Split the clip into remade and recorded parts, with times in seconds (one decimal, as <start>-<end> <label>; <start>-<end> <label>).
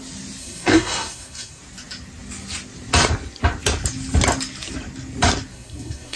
0.0-0.4 recorded; 0.4-1.6 remade; 1.6-5.5 recorded; 5.5-6.2 remade